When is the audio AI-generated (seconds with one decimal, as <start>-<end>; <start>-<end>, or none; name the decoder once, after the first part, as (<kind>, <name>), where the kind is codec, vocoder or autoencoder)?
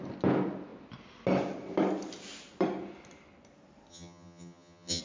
3.9-5.0 (vocoder, HiFi-GAN)